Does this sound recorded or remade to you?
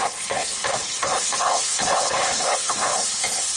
remade